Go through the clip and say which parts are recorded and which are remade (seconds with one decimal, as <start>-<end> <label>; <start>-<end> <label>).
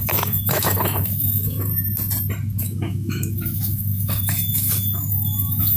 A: 0.0-1.7 remade; 1.7-2.6 recorded; 2.6-5.8 remade